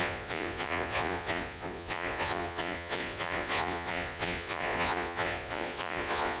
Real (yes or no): no